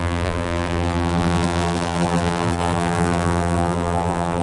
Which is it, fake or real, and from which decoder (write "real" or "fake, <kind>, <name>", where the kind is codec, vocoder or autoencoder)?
fake, vocoder, BigVGAN v2